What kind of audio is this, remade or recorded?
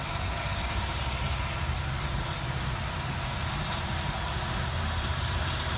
remade